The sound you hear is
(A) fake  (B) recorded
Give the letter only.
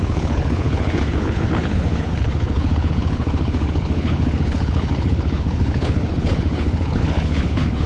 A